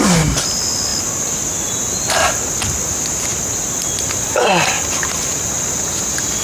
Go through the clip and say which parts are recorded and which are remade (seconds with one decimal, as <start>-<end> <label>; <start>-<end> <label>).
0.0-6.4 recorded